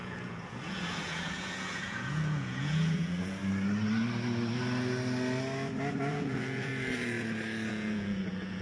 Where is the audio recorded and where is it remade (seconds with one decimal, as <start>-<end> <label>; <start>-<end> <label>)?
0.0-3.4 remade; 3.4-6.1 recorded; 6.1-6.7 remade; 6.7-7.7 recorded; 7.7-8.6 remade